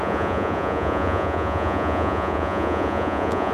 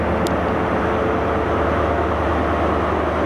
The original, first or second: second